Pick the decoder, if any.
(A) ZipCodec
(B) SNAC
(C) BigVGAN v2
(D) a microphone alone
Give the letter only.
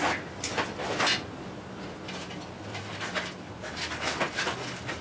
D